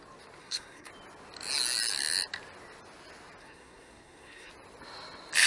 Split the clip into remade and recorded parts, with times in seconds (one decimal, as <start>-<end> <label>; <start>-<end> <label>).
0.0-0.4 recorded; 0.4-0.9 remade; 0.9-3.4 recorded; 3.4-4.5 remade; 4.5-5.5 recorded